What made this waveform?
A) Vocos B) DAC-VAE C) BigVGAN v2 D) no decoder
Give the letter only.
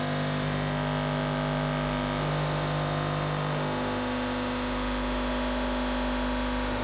B